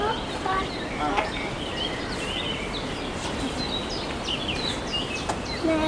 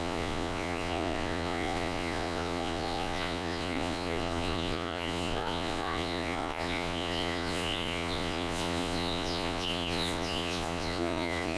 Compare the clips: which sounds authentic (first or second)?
first